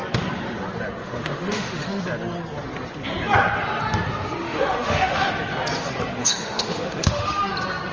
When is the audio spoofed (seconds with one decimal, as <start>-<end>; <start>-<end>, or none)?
1.0-2.0; 4.4-5.3; 6.2-7.5